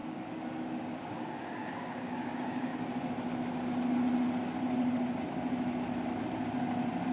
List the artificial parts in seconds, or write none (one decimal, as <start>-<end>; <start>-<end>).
0.0-2.7